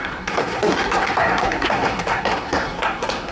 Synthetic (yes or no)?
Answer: yes